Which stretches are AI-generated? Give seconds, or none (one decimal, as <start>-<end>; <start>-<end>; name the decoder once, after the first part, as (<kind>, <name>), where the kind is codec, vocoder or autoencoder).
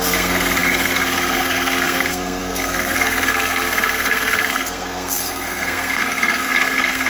0.0-7.1 (codec, SNAC)